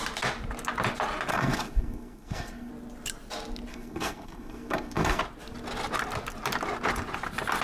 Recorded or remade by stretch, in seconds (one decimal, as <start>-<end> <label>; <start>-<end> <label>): 0.0-1.3 recorded; 1.3-2.7 remade; 2.7-3.7 recorded; 3.7-5.2 remade; 5.2-7.6 recorded